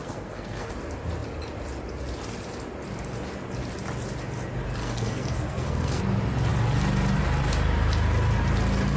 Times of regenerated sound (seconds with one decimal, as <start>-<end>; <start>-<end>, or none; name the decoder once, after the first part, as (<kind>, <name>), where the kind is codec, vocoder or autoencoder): 0.0-0.7 (codec, SNAC); 4.8-6.0